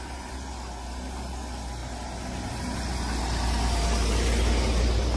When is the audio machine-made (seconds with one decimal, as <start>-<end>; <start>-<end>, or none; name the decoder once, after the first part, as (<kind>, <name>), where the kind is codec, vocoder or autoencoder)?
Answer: none